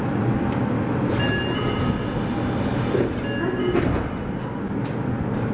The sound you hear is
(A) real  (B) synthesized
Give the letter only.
A